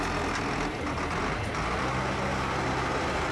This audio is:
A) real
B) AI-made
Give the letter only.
A